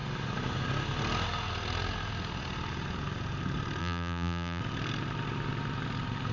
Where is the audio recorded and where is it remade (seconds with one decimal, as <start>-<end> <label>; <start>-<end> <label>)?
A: 0.0-3.8 recorded; 3.8-4.6 remade; 4.6-6.3 recorded